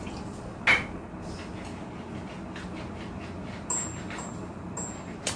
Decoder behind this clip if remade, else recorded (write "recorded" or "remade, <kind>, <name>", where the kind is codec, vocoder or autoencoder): recorded